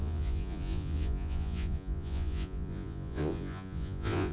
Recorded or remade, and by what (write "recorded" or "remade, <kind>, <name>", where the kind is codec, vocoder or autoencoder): remade, vocoder, Vocos